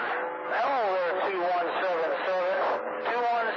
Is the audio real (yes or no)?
yes